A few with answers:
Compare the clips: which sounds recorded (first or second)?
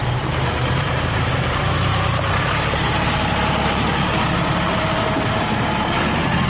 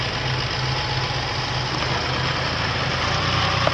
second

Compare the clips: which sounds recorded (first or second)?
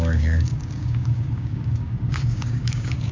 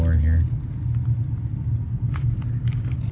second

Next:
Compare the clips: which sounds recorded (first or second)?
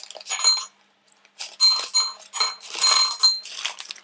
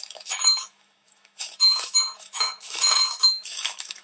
first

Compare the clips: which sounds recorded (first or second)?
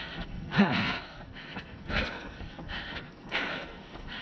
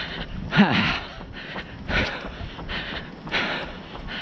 second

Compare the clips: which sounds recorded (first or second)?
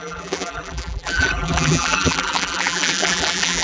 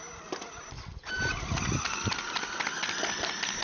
second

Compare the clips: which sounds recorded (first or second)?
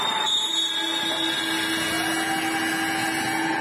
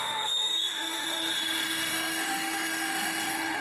first